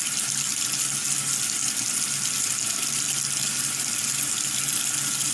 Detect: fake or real real